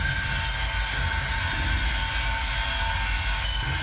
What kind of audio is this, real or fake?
real